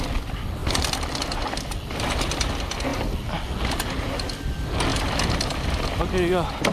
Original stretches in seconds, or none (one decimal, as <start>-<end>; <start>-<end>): 0.0-0.6; 2.5-4.9; 5.5-6.7